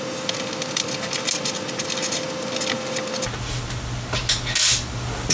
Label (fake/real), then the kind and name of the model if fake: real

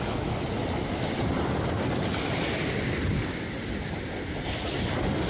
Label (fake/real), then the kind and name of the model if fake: real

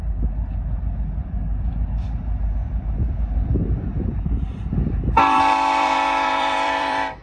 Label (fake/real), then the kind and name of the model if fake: fake, vocoder, BigVGAN v2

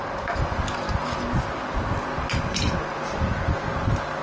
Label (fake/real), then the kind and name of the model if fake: real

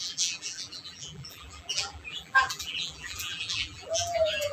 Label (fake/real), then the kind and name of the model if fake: fake, vocoder, BigVGAN v2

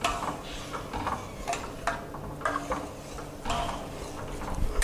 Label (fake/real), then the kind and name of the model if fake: real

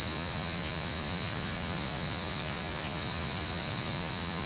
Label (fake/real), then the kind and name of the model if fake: fake, vocoder, Vocos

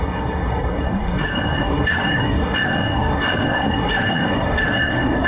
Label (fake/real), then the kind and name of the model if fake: fake, codec, SNAC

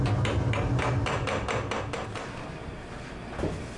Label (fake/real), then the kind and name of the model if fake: real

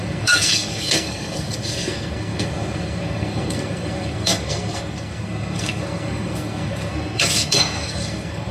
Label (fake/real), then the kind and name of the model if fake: fake, codec, SNAC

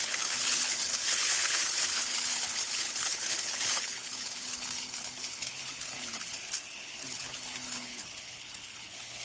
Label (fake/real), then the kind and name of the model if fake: fake, codec, HILCodec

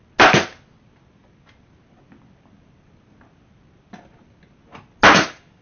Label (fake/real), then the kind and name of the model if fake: real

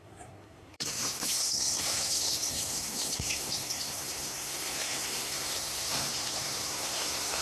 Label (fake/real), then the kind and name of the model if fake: fake, codec, SNAC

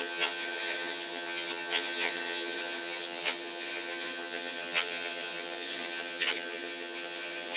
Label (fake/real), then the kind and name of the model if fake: fake, vocoder, HiFi-GAN